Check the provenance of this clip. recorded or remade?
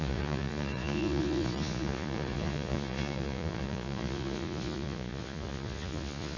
remade